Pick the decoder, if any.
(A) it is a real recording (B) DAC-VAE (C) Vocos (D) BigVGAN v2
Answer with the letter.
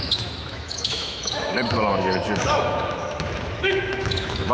B